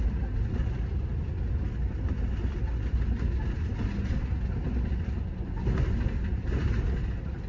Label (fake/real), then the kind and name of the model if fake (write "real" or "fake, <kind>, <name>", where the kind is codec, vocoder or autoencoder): real